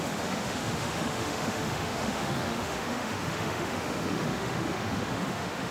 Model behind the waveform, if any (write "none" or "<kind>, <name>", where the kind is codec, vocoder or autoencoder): autoencoder, DAC-VAE